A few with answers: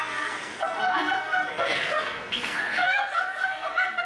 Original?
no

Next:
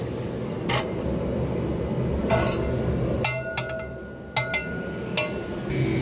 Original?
yes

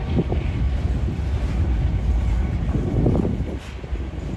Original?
yes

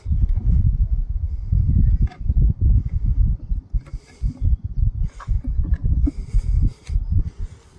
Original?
yes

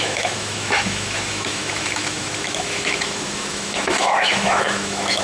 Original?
no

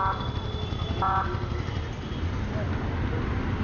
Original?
yes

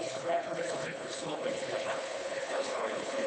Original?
no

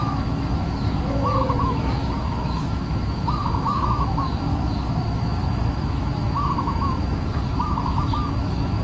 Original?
no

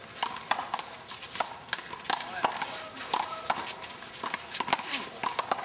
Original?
yes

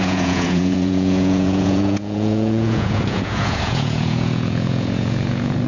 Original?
no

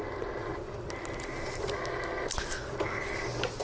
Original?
yes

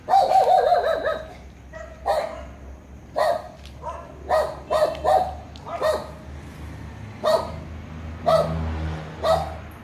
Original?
yes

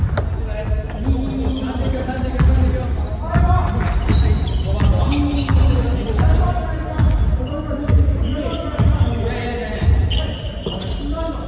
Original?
yes